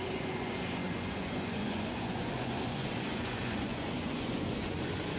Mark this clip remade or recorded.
remade